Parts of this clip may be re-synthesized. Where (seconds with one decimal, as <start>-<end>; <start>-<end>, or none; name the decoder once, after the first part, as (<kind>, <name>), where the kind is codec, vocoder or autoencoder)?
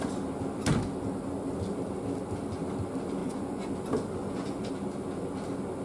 3.2-3.7 (vocoder, Vocos); 4.2-4.7